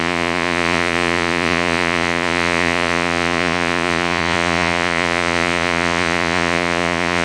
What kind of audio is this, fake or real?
fake